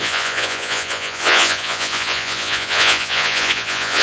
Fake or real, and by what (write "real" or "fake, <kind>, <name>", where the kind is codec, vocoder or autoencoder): fake, vocoder, Vocos